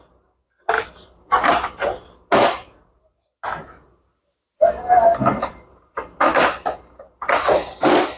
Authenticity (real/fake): real